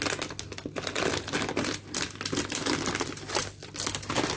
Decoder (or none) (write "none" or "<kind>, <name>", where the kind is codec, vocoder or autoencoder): none